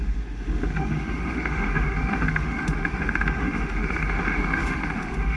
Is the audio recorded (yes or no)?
no